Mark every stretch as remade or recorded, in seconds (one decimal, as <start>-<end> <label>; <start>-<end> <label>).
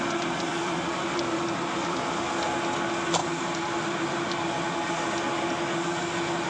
0.0-0.5 recorded; 0.5-2.0 remade; 2.0-3.2 recorded; 3.2-4.9 remade; 4.9-6.5 recorded